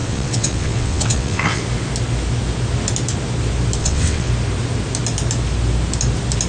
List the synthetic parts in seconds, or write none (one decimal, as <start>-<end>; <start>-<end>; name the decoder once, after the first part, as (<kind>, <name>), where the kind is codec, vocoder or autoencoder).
0.0-1.6 (vocoder, WaveNeXt); 3.8-4.3

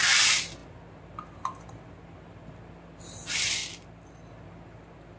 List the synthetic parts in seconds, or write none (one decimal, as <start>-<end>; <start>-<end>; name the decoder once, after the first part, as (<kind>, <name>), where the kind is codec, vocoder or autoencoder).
none

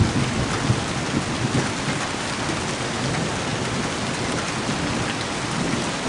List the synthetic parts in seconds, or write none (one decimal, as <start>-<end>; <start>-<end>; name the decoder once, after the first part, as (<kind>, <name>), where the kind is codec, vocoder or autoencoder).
none

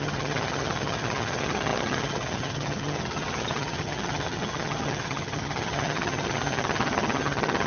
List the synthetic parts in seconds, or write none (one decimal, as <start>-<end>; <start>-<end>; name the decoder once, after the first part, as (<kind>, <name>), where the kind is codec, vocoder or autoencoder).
0.0-7.7 (vocoder, HiFi-GAN)

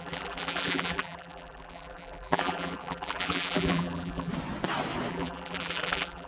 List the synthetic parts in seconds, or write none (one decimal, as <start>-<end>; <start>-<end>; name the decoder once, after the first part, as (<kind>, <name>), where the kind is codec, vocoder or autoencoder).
0.0-4.3 (vocoder, BigVGAN v2); 5.1-6.3

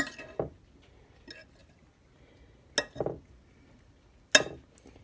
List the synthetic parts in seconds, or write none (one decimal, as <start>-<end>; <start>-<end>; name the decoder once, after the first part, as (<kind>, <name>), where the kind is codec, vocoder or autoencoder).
none